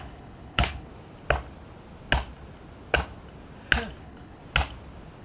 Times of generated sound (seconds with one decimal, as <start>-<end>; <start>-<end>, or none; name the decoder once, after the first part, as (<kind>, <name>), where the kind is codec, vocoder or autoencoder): 0.0-0.9 (codec, HILCodec); 4.0-4.4